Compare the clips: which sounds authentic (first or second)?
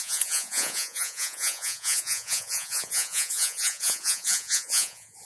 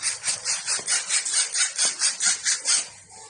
second